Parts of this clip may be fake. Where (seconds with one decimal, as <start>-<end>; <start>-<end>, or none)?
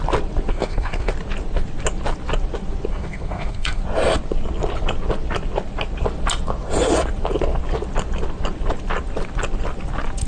0.5-1.1; 2.9-3.8